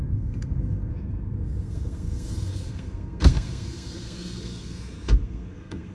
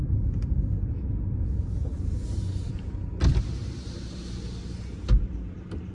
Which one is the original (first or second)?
second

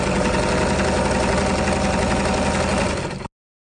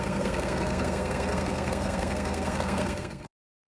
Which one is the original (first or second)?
first